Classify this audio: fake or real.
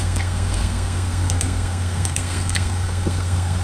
fake